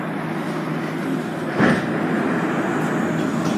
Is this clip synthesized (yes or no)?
no